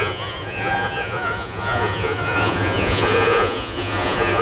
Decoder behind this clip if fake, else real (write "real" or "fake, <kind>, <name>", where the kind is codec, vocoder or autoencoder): fake, vocoder, Vocos